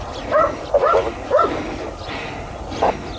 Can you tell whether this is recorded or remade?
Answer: recorded